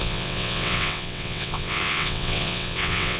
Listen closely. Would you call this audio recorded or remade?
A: remade